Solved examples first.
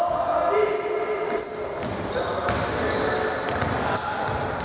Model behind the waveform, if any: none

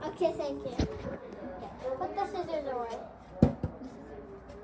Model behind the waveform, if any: none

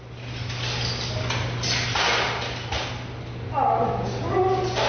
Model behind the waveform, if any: none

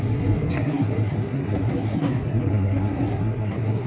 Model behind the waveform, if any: codec, SNAC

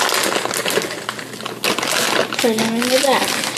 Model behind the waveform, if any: none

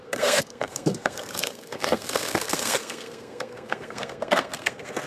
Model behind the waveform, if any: codec, SNAC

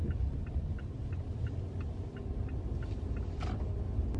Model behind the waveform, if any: none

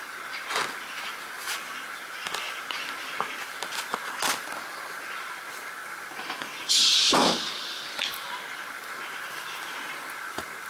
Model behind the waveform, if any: none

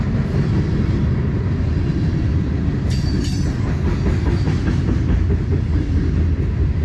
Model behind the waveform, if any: none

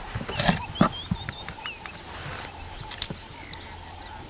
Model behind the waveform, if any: none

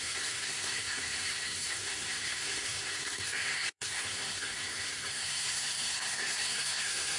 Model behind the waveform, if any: codec, SNAC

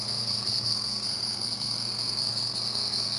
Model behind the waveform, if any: codec, SNAC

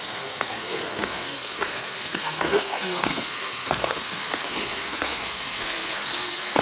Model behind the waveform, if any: codec, SNAC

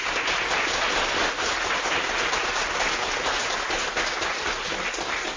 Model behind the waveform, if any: none